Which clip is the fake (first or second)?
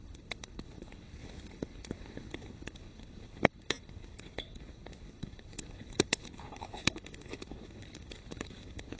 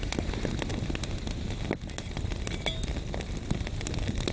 first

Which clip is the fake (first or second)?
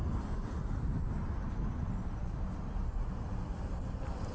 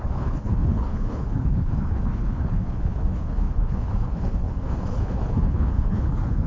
second